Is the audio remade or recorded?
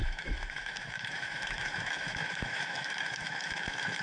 remade